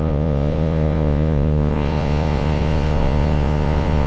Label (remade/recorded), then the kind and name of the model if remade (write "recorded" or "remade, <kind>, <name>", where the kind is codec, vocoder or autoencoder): remade, vocoder, Vocos